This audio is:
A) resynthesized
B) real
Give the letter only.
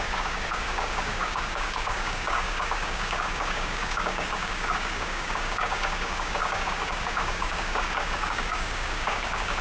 A